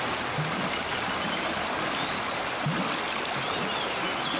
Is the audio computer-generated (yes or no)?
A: no